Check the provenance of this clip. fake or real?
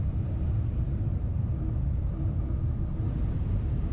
fake